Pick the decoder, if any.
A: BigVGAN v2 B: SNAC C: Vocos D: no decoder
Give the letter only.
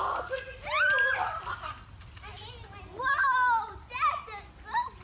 D